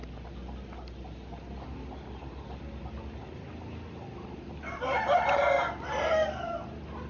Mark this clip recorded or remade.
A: recorded